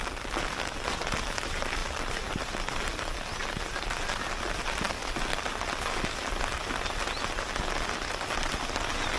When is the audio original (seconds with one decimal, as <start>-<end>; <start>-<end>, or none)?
0.0-9.2